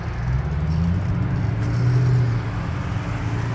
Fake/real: real